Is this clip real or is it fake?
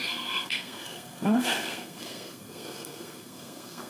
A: fake